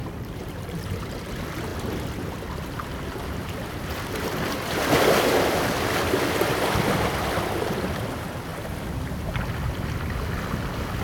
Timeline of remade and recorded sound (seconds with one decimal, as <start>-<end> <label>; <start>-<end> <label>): 0.0-1.2 remade; 1.2-11.0 recorded